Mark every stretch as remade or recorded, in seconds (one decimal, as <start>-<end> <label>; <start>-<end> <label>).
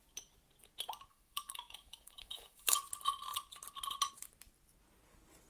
0.0-1.1 recorded; 1.1-2.8 remade; 2.8-5.5 recorded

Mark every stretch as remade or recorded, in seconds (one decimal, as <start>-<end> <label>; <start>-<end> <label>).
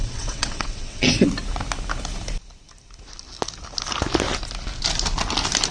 0.0-1.1 remade; 1.1-5.7 recorded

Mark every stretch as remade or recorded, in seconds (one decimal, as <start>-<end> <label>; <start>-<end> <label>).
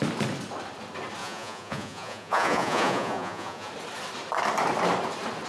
0.0-1.2 recorded; 1.2-3.7 remade; 3.7-5.5 recorded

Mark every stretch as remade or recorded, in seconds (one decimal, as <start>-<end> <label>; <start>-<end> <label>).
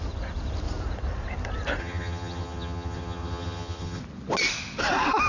0.0-1.8 recorded; 1.8-4.0 remade; 4.0-5.3 recorded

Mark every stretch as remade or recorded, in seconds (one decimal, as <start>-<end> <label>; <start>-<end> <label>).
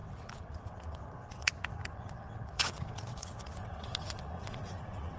0.0-1.5 remade; 1.5-1.9 recorded; 1.9-5.2 remade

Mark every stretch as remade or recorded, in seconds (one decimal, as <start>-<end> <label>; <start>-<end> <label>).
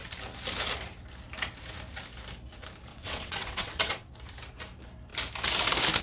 0.0-2.9 recorded; 2.9-4.1 remade; 4.1-6.0 recorded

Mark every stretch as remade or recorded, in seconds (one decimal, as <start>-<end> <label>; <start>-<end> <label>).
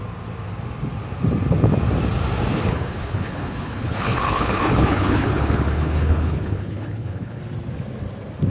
0.0-2.5 recorded; 2.5-7.4 remade; 7.4-8.5 recorded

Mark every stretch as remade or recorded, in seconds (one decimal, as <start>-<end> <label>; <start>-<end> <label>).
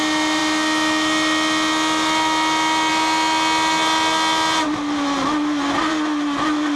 0.0-6.8 recorded